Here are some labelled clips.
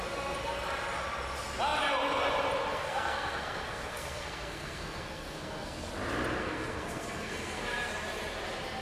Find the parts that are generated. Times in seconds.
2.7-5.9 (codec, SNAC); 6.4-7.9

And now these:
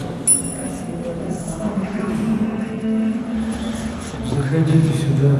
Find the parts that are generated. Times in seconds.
1.2-2.1 (codec, SNAC); 2.6-4.9

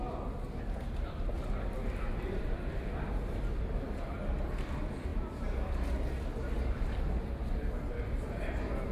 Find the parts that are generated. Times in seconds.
none

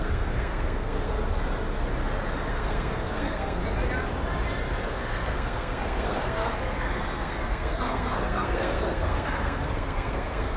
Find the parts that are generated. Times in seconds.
0.0-1.1 (codec, SNAC); 2.5-3.6; 4.9-10.6